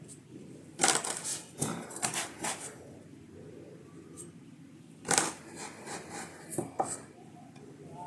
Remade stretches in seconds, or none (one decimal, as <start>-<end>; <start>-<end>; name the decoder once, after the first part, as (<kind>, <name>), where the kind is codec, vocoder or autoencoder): 0.0-1.3 (vocoder, BigVGAN v2); 6.2-8.1